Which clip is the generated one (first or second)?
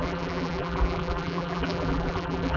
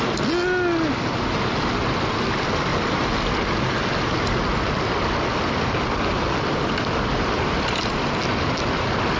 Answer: first